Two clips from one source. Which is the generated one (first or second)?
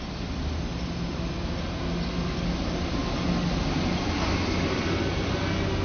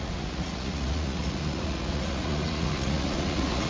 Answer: second